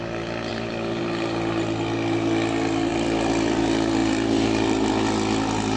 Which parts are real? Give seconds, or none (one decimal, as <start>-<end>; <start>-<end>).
0.0-0.5; 1.0-2.9; 3.6-4.0; 4.9-5.8